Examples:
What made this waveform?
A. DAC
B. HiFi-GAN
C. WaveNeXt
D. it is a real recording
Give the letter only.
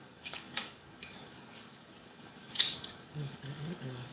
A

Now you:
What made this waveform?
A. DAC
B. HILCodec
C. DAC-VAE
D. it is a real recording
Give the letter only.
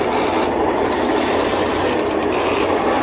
D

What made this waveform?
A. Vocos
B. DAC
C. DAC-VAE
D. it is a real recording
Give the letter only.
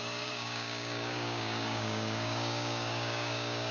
B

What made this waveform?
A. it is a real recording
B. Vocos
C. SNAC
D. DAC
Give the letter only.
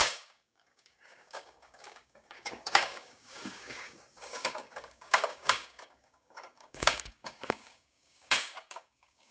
D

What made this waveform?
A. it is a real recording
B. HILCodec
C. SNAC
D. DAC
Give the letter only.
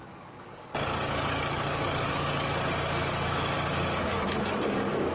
D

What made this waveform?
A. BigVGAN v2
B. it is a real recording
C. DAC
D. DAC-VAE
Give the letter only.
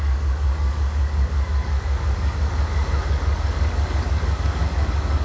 C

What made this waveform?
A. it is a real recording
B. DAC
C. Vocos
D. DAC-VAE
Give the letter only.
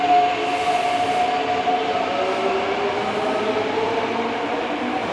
A